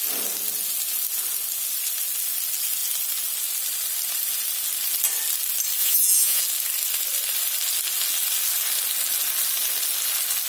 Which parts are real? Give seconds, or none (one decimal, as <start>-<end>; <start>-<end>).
0.0-5.8; 6.4-10.5